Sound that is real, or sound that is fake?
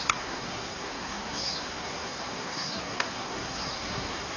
fake